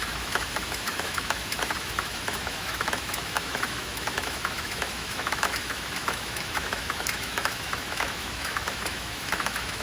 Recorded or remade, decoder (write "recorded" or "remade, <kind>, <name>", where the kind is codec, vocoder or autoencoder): remade, autoencoder, DAC-VAE